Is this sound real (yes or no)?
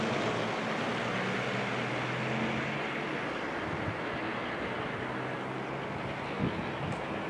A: yes